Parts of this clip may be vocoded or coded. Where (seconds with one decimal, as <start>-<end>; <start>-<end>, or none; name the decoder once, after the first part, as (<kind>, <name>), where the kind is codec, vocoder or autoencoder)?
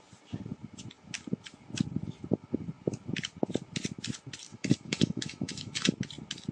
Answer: 4.5-5.9 (autoencoder, DAC-VAE)